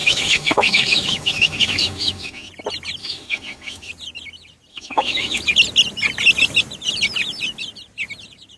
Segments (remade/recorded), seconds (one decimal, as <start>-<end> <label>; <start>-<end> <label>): 0.0-2.5 remade; 2.5-3.0 recorded; 3.0-3.9 remade; 3.9-4.7 recorded; 4.7-5.4 remade; 5.4-8.6 recorded